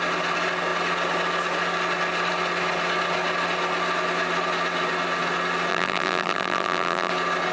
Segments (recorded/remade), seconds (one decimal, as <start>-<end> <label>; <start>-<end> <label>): 0.0-5.7 recorded; 5.7-7.1 remade; 7.1-7.5 recorded